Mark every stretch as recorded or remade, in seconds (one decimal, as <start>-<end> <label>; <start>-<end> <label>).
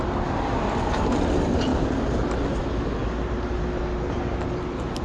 0.0-5.0 recorded